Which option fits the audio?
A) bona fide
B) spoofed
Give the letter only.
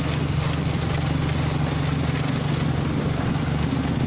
A